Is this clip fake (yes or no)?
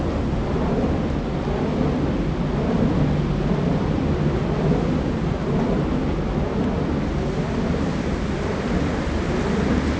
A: no